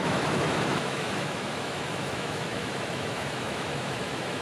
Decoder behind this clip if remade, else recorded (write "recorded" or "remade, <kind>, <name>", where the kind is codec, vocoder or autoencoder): remade, autoencoder, DAC-VAE